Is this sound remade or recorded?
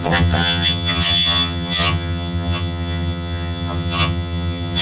remade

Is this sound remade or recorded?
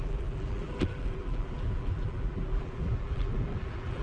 remade